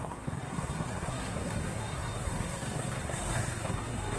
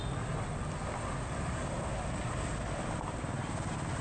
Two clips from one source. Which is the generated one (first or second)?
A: first